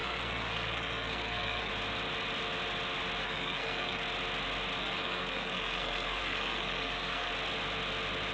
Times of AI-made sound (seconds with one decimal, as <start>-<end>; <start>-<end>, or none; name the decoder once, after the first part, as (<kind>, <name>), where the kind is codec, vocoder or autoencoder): 0.0-1.7 (codec, SNAC); 3.2-4.0; 4.8-7.3